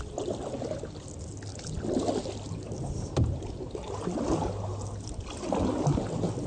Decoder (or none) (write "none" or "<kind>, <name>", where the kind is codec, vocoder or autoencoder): none